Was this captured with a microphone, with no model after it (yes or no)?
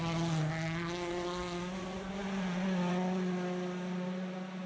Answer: yes